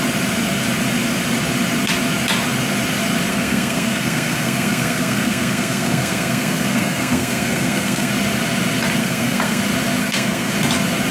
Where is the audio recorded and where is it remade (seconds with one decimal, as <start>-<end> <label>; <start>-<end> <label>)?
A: 0.0-3.3 recorded; 3.3-8.1 remade; 8.1-9.0 recorded; 9.0-9.6 remade; 9.6-10.0 recorded; 10.0-10.5 remade; 10.5-11.1 recorded